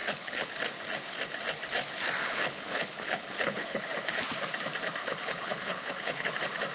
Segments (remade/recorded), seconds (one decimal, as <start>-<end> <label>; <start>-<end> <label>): 0.0-0.5 remade; 0.5-2.2 recorded; 2.2-3.8 remade; 3.8-5.0 recorded; 5.0-6.3 remade; 6.3-6.7 recorded